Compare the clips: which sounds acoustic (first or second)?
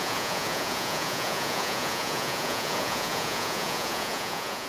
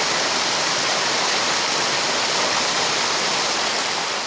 second